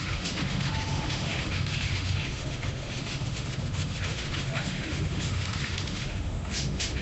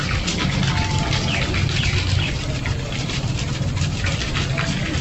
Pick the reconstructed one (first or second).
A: first